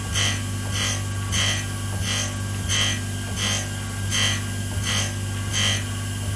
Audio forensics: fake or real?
real